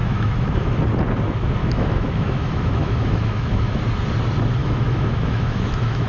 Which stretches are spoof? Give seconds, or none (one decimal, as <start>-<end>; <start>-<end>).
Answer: 0.0-0.8; 1.6-3.8; 4.6-6.1